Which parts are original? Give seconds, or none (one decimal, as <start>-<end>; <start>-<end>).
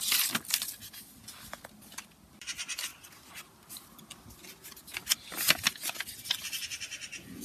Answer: 0.0-7.4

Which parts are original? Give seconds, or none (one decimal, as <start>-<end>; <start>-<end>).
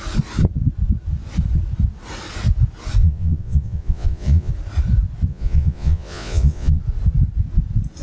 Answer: 0.0-3.0; 4.5-5.3; 6.8-8.0